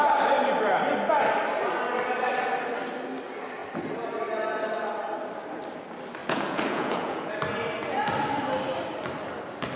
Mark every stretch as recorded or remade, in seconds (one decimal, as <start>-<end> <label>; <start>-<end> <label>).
0.0-6.2 recorded; 6.2-7.3 remade; 7.3-9.8 recorded